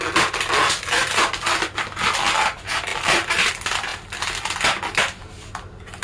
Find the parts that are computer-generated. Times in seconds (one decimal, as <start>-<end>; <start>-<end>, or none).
2.9-3.5